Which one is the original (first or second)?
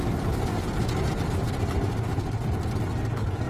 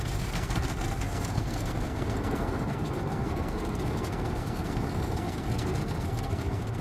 first